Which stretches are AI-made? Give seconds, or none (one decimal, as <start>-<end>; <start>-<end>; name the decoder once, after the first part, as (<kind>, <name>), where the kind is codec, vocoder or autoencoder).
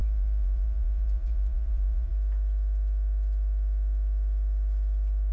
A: 0.0-2.1 (vocoder, Vocos)